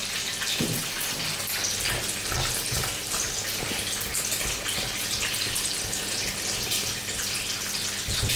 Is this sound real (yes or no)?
yes